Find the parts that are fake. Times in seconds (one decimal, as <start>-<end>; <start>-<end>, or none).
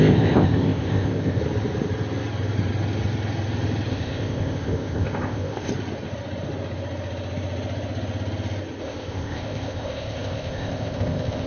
0.0-1.4; 3.9-5.7; 8.8-11.5